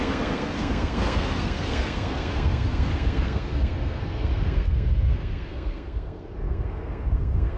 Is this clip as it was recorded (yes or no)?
no